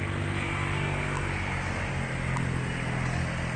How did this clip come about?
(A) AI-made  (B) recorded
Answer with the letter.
B